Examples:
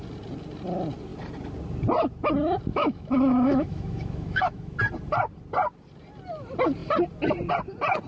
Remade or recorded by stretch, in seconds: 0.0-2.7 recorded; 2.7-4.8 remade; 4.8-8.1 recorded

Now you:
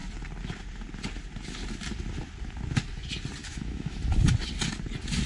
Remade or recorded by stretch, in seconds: 0.0-3.4 recorded; 3.4-4.0 remade; 4.0-5.3 recorded

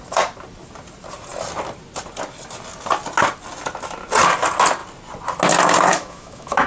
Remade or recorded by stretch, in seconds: 0.0-5.9 recorded; 5.9-6.7 remade

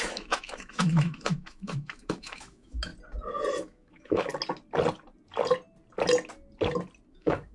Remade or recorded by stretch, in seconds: 0.0-2.9 remade; 2.9-3.5 recorded; 3.5-4.3 remade; 4.3-7.1 recorded; 7.1-7.5 remade

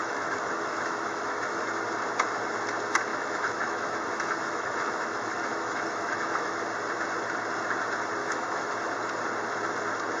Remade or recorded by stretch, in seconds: 0.0-1.6 remade; 1.6-3.1 recorded; 3.1-6.6 remade; 6.6-8.2 recorded; 8.2-8.9 remade; 8.9-10.2 recorded